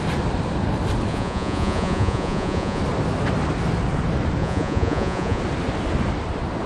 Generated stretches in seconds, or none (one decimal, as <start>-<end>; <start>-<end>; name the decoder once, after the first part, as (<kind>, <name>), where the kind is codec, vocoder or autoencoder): 1.1-2.8 (vocoder, Vocos); 4.4-5.4

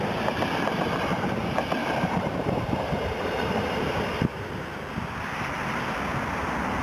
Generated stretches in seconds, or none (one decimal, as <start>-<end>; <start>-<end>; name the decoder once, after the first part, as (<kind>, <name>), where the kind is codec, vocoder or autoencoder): 1.8-4.6 (vocoder, BigVGAN v2)

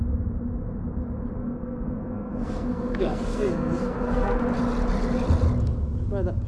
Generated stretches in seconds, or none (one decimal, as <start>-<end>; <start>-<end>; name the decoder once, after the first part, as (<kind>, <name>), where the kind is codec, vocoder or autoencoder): 1.4-4.4 (codec, SNAC)

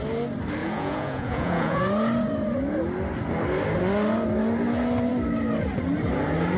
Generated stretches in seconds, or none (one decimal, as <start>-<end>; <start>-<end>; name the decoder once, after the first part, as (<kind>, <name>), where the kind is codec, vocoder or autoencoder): 0.6-1.8 (vocoder, Vocos)

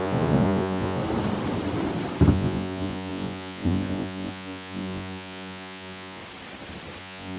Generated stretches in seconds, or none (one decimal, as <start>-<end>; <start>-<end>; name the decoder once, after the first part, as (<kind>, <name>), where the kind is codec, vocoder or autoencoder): 0.0-1.0 (vocoder, Vocos); 2.3-6.2; 7.0-7.4

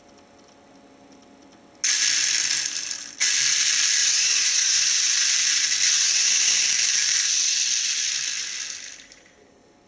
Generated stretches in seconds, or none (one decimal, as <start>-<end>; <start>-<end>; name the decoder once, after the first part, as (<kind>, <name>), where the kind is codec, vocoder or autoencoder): 4.0-4.9 (vocoder, Vocos)

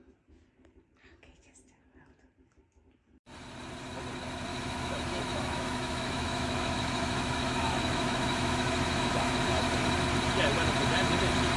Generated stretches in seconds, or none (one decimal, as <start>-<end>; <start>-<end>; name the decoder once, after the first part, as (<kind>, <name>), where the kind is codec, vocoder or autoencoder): 4.5-9.4 (autoencoder, DAC-VAE)

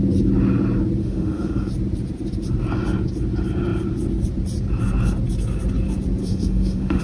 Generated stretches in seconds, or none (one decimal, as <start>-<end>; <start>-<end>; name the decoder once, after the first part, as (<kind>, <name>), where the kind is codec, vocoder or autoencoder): 1.0-1.7 (autoencoder, DAC-VAE); 6.2-7.0